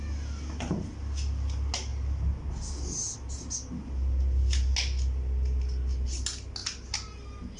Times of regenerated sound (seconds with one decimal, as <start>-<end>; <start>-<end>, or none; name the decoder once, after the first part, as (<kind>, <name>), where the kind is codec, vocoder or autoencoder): none